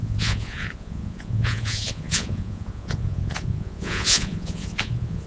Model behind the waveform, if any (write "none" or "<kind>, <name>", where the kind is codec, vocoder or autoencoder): vocoder, Vocos